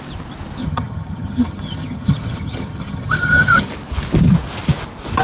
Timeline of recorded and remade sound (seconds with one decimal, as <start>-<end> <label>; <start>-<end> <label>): 0.0-0.6 recorded; 0.6-3.7 remade; 3.7-5.2 recorded